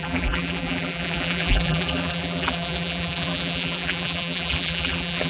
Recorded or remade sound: remade